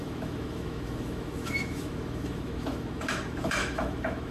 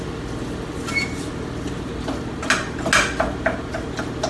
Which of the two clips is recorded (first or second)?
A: second